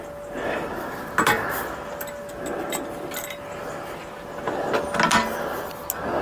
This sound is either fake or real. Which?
real